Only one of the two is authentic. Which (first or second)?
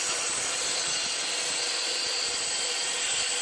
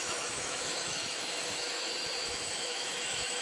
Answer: first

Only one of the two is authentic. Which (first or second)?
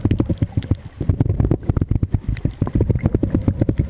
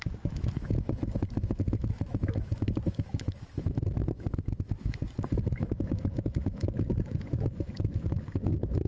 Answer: first